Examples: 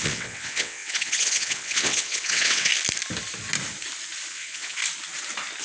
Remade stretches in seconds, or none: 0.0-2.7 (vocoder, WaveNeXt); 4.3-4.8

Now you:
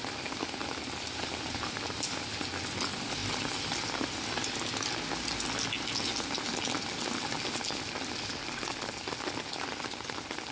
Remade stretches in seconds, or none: none